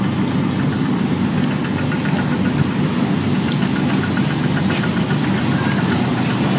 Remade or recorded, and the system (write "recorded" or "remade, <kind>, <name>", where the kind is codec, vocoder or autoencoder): recorded